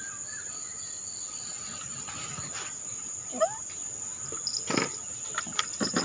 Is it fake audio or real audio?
real